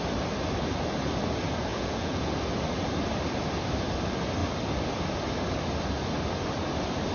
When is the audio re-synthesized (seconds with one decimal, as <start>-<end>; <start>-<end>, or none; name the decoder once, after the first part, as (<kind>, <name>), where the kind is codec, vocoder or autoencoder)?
1.7-2.3 (vocoder, Vocos)